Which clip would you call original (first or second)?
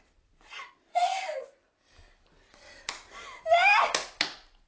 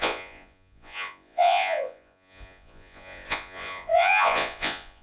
first